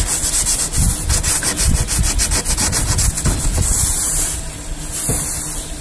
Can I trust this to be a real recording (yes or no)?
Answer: yes